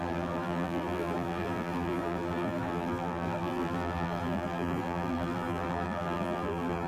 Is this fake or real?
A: fake